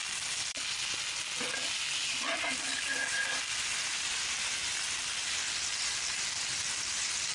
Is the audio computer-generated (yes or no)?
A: no